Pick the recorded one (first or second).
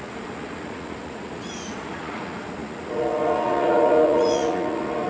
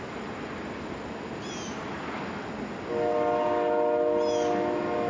second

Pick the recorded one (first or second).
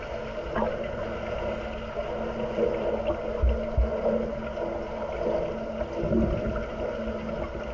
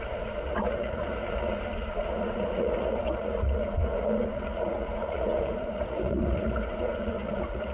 first